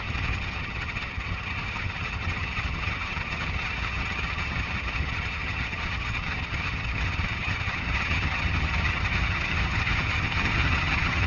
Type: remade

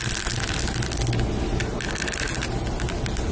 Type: recorded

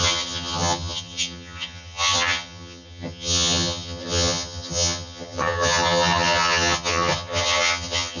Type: remade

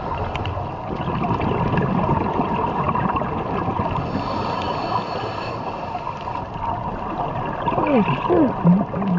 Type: recorded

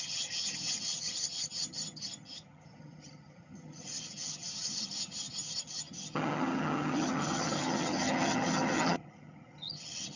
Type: remade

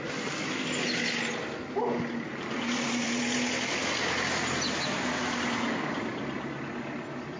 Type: recorded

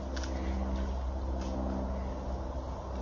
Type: recorded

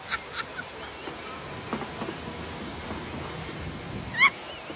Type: recorded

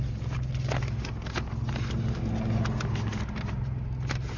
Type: recorded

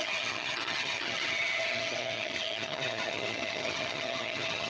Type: remade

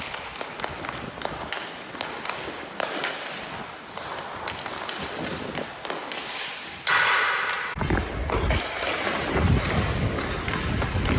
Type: recorded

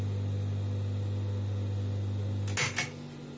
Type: recorded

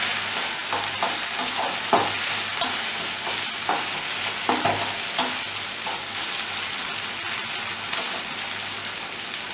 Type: recorded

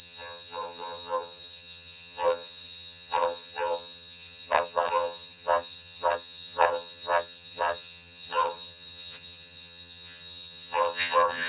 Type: remade